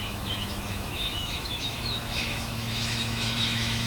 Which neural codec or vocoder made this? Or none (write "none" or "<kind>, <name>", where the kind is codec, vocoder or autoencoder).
autoencoder, DAC-VAE